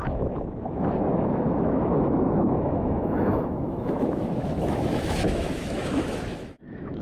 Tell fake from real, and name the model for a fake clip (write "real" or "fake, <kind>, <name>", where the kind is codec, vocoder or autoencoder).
fake, autoencoder, DAC-VAE